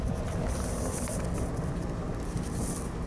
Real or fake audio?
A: real